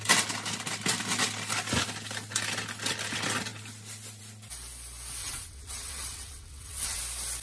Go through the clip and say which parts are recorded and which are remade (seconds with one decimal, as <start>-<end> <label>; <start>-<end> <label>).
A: 0.0-5.2 recorded; 5.2-7.0 remade; 7.0-7.4 recorded